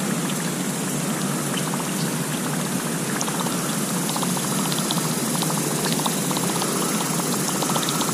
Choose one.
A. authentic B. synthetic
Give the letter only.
A